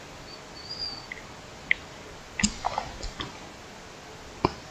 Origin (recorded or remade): recorded